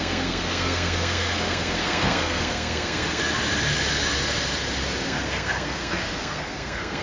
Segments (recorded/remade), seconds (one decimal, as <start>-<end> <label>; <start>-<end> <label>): 0.0-3.2 remade; 3.2-5.0 recorded; 5.0-7.0 remade